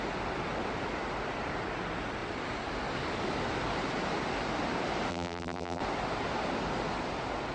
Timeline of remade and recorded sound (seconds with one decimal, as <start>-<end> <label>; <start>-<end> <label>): 0.0-5.1 recorded; 5.1-5.8 remade; 5.8-7.5 recorded